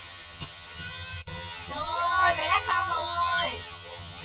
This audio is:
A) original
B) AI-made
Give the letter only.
B